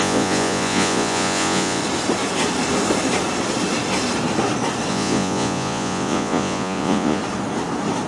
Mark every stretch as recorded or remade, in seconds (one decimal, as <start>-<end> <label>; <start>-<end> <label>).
0.0-1.8 remade; 1.8-4.9 recorded; 4.9-7.2 remade; 7.2-8.1 recorded